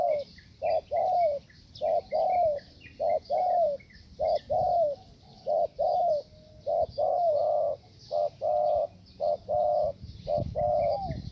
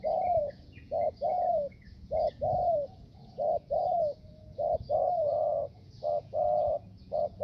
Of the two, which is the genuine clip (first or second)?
first